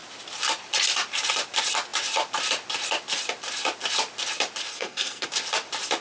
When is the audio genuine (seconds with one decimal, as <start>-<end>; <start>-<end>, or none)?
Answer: 0.0-4.7; 5.3-6.0